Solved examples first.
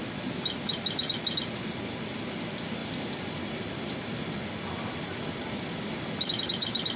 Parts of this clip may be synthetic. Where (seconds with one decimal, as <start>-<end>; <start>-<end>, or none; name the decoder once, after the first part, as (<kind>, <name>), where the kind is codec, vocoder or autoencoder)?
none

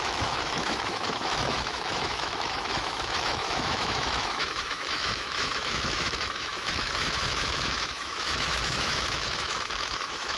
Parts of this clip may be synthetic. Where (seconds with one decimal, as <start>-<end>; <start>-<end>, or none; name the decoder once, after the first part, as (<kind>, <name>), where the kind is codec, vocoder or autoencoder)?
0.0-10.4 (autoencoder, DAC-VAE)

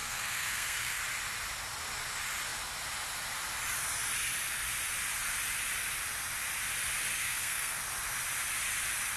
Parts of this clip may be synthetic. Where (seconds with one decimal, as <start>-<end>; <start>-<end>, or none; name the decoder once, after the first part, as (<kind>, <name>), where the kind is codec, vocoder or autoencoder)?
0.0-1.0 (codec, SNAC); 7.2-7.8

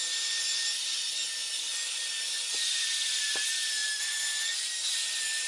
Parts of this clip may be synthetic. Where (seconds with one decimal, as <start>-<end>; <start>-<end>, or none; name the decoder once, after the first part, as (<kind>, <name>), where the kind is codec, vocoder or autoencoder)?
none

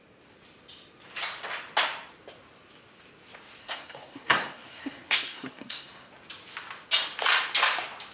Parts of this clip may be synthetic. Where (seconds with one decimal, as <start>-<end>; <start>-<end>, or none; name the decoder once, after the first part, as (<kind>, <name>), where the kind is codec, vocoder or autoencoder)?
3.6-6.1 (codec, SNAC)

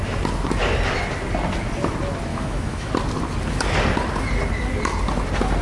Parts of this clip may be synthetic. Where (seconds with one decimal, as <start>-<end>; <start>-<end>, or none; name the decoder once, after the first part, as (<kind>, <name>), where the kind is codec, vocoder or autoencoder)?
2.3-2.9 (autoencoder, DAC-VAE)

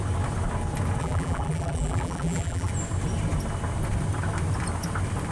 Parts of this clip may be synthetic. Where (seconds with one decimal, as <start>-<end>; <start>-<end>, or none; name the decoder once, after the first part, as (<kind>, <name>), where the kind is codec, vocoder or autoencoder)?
1.0-2.7 (vocoder, BigVGAN v2)